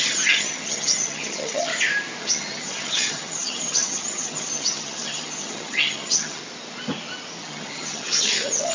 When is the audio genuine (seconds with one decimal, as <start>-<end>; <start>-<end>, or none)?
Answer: 1.7-2.2; 6.4-7.4